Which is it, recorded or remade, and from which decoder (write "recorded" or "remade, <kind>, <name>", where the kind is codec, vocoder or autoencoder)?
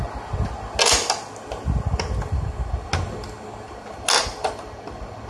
recorded